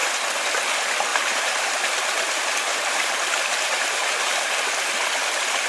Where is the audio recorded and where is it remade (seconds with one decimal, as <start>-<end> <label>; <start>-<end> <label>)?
0.0-1.1 recorded; 1.1-4.5 remade; 4.5-5.7 recorded